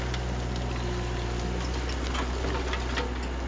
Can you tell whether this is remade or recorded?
recorded